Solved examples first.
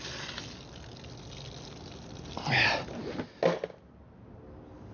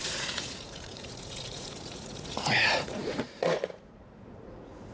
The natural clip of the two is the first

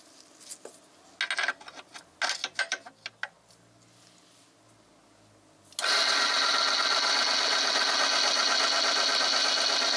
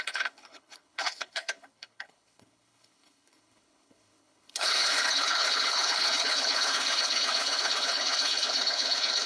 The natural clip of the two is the first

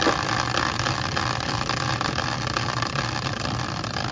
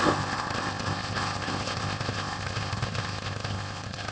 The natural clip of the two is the first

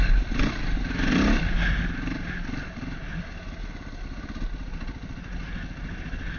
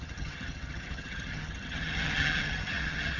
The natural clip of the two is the first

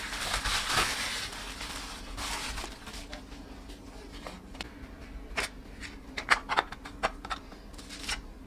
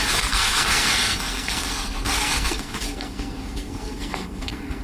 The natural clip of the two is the first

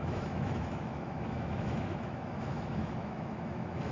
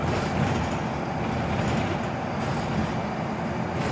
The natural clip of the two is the second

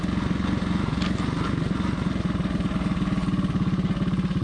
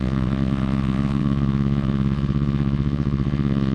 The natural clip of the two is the first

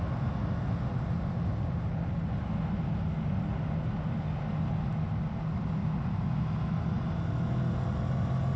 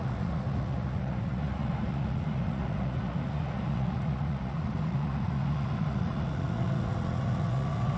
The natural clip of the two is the first